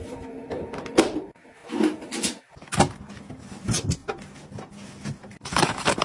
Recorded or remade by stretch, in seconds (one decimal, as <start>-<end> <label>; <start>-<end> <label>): 0.0-1.6 remade; 1.6-3.3 recorded; 3.3-4.0 remade; 4.0-5.4 recorded; 5.4-6.0 remade